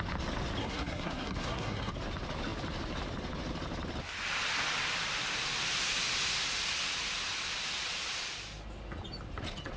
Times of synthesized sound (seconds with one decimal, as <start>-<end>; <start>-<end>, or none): 0.6-1.9